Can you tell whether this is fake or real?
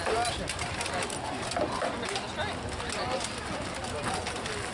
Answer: real